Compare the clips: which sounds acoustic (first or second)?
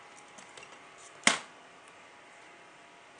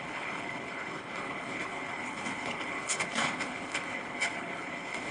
first